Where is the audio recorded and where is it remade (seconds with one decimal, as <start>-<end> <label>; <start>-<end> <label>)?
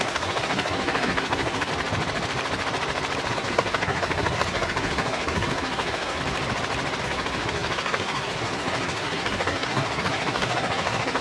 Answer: 0.0-1.7 remade; 1.7-3.3 recorded; 3.3-6.2 remade; 6.2-7.0 recorded; 7.0-11.2 remade